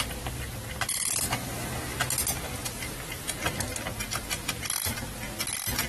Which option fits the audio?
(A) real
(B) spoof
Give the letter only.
A